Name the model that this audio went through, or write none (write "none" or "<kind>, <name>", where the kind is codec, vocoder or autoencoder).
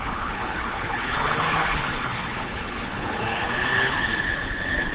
codec, HILCodec